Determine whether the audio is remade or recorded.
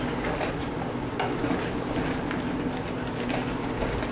recorded